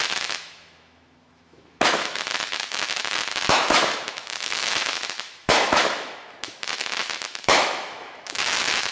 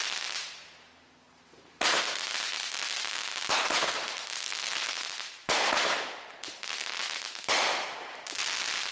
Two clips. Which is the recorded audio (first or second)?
second